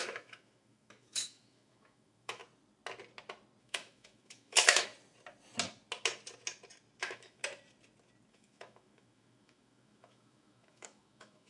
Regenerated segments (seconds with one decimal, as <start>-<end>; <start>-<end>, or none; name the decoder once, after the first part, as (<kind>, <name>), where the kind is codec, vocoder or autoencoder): 0.0-2.4 (autoencoder, DAC-VAE); 3.6-4.9; 7.0-7.4; 8.3-11.5